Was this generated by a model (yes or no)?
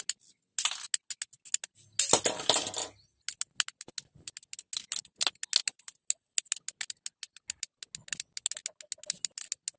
no